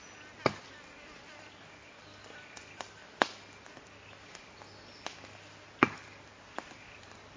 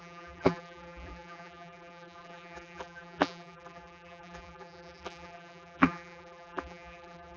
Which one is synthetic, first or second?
second